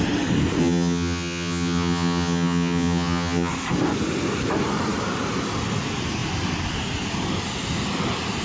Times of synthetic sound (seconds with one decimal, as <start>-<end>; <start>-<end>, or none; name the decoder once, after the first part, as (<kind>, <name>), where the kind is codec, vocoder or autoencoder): 0.6-3.5 (vocoder, HiFi-GAN)